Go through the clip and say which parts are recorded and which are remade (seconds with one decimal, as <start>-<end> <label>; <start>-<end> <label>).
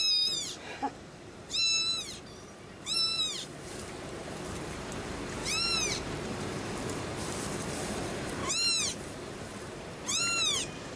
0.0-8.4 remade; 8.4-8.9 recorded; 8.9-11.0 remade